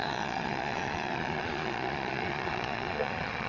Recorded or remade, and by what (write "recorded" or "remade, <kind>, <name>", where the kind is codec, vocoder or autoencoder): remade, vocoder, Vocos